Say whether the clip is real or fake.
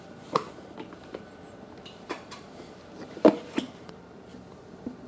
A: fake